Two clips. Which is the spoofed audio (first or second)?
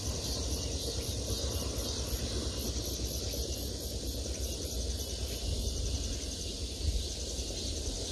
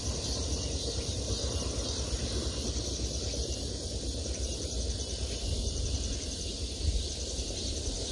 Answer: second